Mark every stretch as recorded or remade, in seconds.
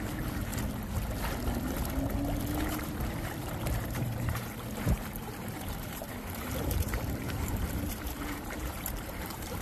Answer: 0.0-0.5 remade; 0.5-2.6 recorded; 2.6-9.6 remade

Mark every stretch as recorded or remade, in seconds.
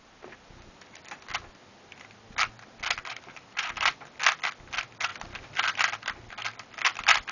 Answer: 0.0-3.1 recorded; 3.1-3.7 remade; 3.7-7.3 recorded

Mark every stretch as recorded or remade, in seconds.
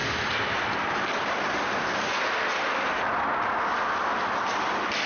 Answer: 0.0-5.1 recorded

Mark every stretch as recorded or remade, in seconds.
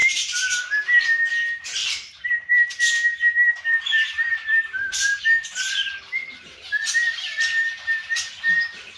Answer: 0.0-0.6 remade; 0.6-1.8 recorded; 1.8-5.2 remade; 5.2-7.0 recorded; 7.0-7.7 remade; 7.7-9.0 recorded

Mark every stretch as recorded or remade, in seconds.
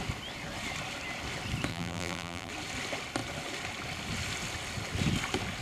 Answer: 0.0-1.7 recorded; 1.7-2.5 remade; 2.5-5.6 recorded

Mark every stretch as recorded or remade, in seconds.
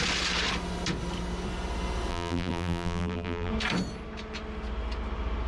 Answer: 0.0-2.1 recorded; 2.1-3.5 remade; 3.5-5.5 recorded